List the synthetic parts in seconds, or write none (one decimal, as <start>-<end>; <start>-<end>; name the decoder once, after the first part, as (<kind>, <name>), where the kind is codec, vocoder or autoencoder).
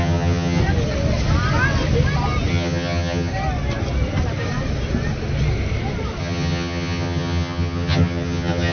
0.0-0.6 (vocoder, HiFi-GAN); 2.5-3.3; 6.2-8.7